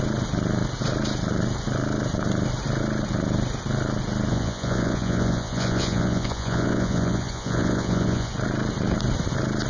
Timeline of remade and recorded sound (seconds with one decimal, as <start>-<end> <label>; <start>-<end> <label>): 0.0-4.3 recorded; 4.3-8.3 remade; 8.3-9.7 recorded